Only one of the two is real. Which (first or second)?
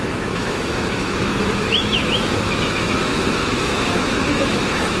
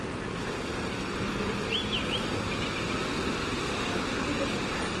second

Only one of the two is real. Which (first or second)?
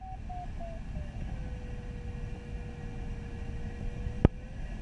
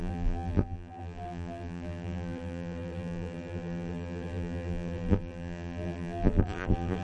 first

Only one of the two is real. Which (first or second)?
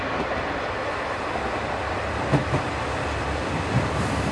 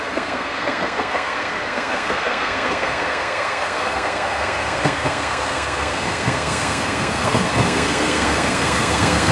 first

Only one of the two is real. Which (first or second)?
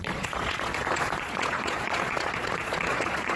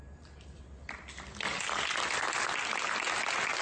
second